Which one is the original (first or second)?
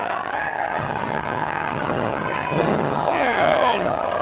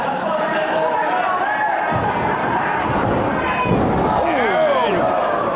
second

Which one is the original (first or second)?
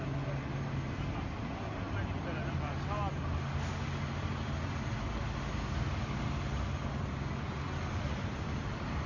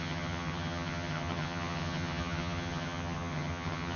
first